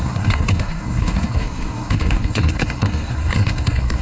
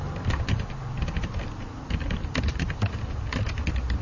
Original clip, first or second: second